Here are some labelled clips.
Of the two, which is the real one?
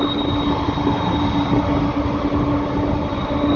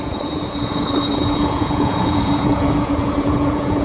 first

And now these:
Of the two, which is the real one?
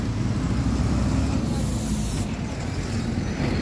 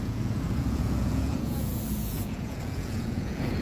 first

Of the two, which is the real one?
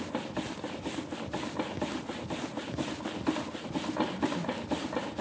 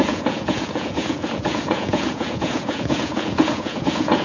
first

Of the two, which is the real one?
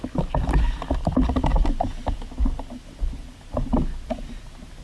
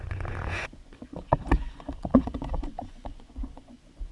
first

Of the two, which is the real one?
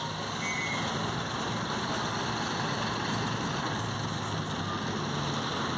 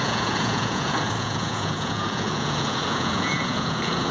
first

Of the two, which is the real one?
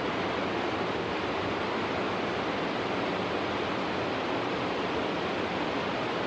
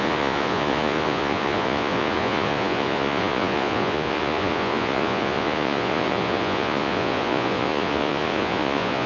first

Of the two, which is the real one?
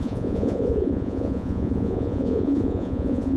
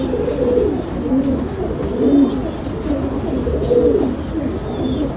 second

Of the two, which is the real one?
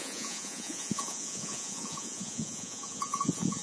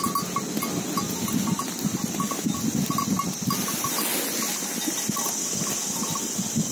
second